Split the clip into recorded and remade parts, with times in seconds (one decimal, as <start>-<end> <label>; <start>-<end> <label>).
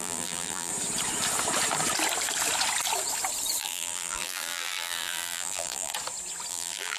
0.0-0.7 remade; 0.7-3.6 recorded; 3.6-5.9 remade; 5.9-6.5 recorded; 6.5-7.0 remade